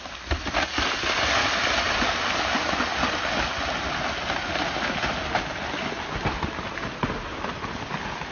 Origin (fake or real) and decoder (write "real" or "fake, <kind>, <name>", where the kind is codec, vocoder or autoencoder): real